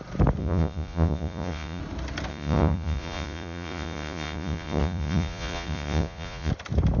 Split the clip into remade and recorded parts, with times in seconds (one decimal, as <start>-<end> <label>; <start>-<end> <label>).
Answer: 0.0-0.4 recorded; 0.4-1.8 remade; 1.8-2.3 recorded; 2.3-6.5 remade; 6.5-7.0 recorded